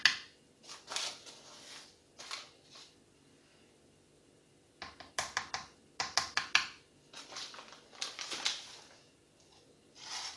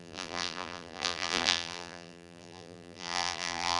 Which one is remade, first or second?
second